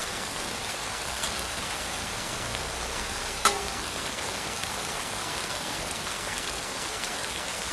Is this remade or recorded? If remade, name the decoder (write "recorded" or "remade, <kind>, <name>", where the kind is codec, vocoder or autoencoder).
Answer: remade, codec, SNAC